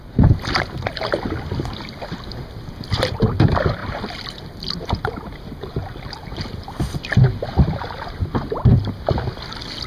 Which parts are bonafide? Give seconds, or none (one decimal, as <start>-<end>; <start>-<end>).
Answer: 0.0-3.8; 5.1-9.9